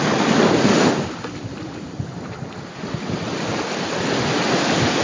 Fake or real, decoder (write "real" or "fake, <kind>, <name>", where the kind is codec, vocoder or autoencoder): real